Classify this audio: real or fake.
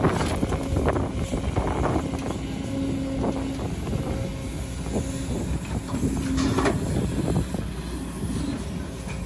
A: real